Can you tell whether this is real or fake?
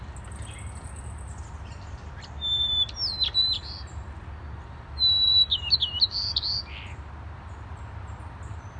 real